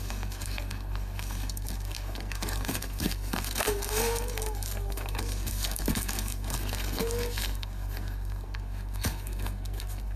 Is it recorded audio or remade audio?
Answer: remade